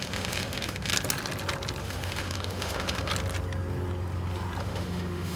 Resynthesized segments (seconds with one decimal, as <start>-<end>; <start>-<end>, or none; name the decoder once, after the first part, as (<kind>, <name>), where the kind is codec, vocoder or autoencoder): 0.0-0.9 (autoencoder, DAC-VAE); 1.8-3.1; 4.6-5.4